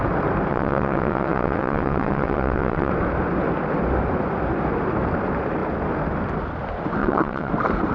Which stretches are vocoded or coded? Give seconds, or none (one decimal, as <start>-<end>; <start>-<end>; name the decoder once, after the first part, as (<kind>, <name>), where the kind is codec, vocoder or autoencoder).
0.5-2.9 (vocoder, WaveNeXt); 7.0-7.5